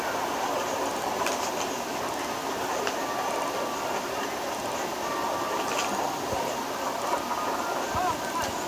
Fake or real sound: real